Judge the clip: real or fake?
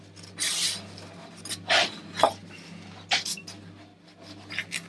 real